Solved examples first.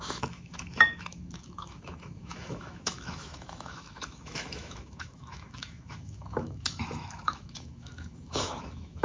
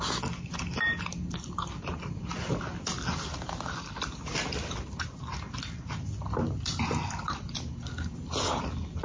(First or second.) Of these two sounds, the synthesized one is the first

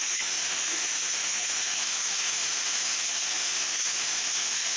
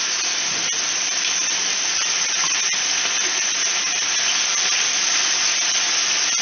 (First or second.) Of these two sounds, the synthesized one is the first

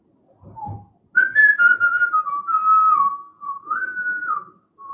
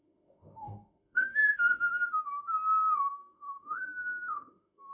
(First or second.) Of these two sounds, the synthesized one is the second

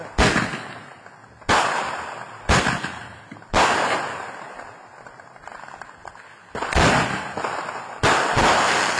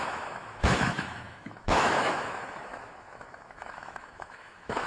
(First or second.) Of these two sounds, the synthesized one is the second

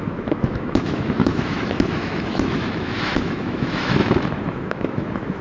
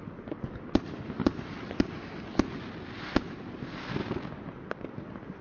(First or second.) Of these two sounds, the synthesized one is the first